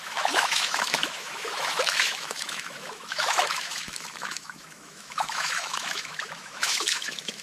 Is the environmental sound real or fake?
fake